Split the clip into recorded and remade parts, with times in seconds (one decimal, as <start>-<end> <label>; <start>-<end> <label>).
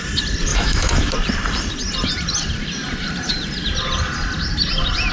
0.0-0.5 recorded; 0.5-1.1 remade; 1.1-5.1 recorded